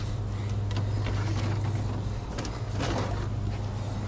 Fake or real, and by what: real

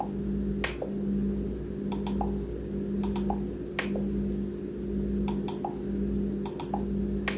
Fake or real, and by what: real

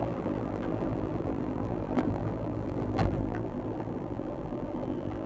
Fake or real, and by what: fake, vocoder, BigVGAN v2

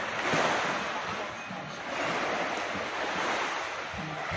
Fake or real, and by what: real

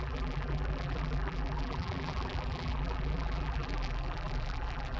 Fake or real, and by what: fake, vocoder, BigVGAN v2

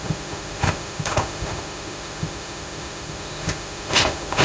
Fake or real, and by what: fake, autoencoder, DAC-VAE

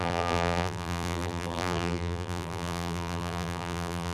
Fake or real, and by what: fake, vocoder, BigVGAN v2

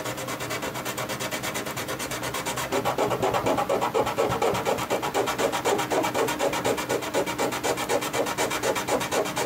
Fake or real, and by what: real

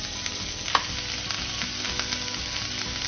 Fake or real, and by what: real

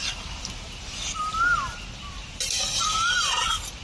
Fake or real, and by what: real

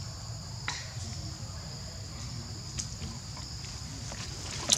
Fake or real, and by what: real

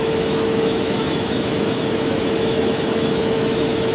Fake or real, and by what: fake, autoencoder, DAC-VAE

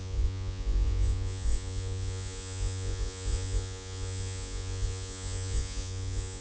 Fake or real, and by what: fake, vocoder, Vocos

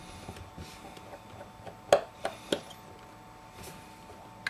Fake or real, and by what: real